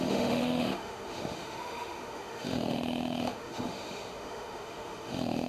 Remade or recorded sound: remade